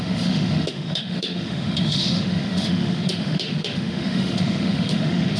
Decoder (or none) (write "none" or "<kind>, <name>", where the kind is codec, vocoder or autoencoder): autoencoder, DAC-VAE